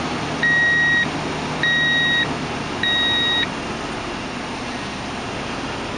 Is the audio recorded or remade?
recorded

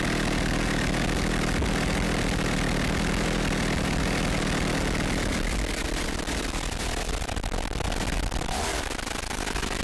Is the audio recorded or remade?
recorded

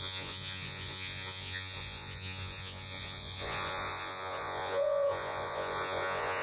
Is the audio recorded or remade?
remade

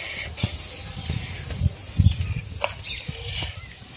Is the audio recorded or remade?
recorded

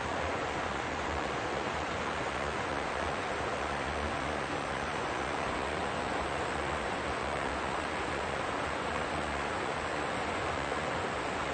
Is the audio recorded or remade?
remade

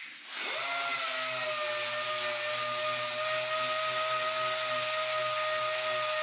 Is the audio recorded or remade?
recorded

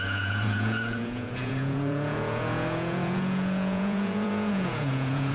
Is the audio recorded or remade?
remade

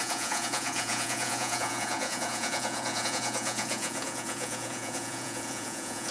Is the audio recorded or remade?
remade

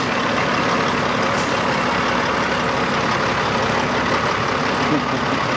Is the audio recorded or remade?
recorded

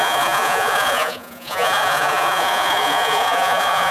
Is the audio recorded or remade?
remade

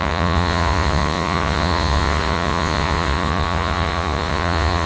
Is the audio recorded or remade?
remade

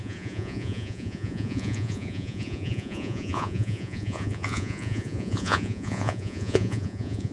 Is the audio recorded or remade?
remade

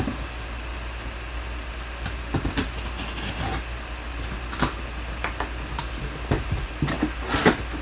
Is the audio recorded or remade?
recorded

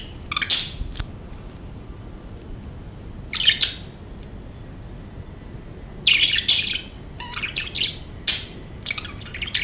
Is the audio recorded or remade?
recorded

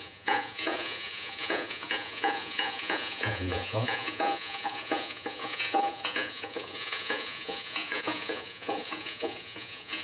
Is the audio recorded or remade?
remade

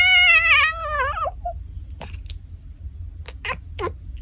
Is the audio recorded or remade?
recorded